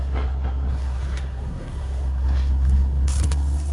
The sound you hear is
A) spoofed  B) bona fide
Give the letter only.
A